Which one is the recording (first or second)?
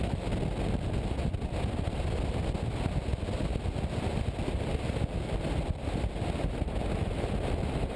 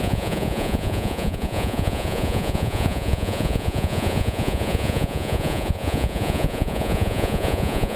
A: first